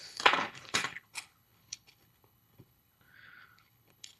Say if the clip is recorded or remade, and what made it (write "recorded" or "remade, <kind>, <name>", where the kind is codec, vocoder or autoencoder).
remade, codec, HILCodec